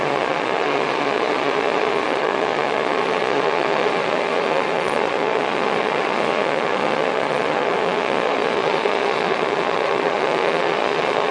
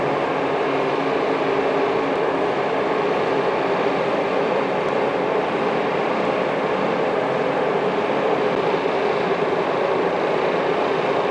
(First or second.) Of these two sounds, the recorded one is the second